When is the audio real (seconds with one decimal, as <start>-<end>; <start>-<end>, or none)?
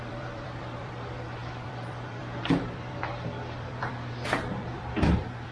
none